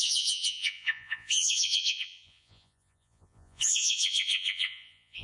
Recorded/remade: remade